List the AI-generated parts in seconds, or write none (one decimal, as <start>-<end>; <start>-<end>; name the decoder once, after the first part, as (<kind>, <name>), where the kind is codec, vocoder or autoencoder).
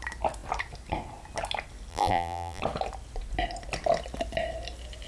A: 1.9-2.6 (vocoder, BigVGAN v2)